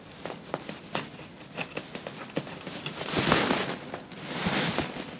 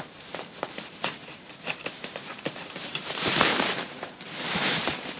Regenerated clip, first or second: second